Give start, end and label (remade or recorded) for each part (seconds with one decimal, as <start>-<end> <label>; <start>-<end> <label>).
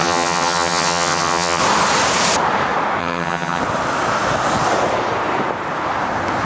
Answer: 0.0-1.6 remade; 1.6-3.0 recorded; 3.0-3.6 remade; 3.6-6.5 recorded